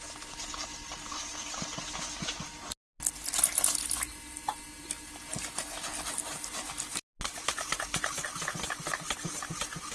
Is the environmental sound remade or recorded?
recorded